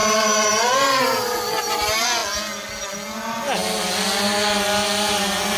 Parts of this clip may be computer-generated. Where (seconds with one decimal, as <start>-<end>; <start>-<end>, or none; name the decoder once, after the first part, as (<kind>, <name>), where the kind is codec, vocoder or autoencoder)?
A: none